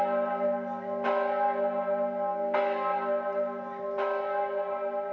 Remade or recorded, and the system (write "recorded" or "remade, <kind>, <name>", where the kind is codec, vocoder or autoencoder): recorded